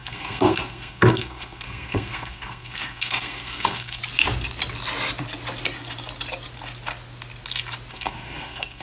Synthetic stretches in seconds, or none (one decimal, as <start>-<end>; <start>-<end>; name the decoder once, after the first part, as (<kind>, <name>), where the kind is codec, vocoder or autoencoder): 0.0-4.0 (codec, SNAC); 7.9-8.8